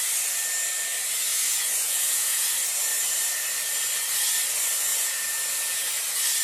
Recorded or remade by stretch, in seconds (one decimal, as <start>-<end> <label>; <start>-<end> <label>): 0.0-1.3 recorded; 1.3-2.5 remade; 2.5-4.9 recorded; 4.9-5.4 remade; 5.4-6.4 recorded